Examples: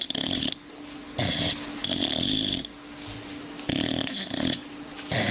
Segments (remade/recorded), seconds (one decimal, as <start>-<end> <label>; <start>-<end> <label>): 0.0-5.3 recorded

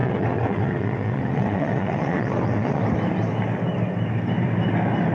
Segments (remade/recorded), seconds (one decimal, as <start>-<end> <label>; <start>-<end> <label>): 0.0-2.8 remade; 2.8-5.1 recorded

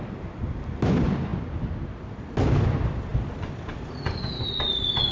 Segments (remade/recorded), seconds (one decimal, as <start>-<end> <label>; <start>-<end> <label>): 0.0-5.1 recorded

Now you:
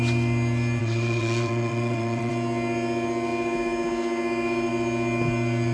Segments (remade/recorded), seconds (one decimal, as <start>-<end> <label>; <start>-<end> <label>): 0.0-0.8 recorded; 0.8-2.3 remade; 2.3-5.7 recorded